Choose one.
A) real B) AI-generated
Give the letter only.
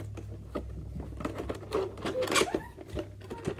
A